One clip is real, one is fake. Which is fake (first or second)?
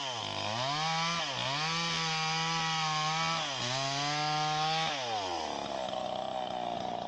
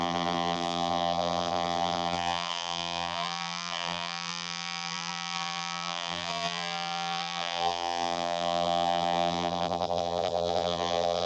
second